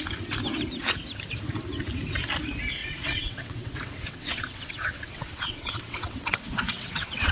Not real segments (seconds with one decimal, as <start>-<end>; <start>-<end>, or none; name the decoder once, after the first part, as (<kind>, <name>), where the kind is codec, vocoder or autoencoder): 2.8-7.3 (vocoder, WaveNeXt)